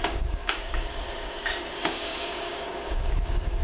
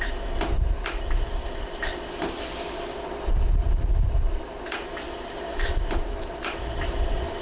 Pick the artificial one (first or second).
first